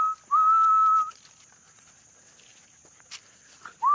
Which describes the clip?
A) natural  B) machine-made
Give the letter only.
A